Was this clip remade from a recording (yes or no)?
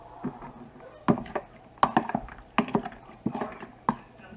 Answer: no